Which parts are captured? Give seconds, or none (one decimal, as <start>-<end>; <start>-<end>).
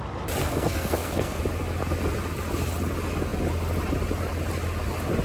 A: 0.0-0.4; 1.4-5.2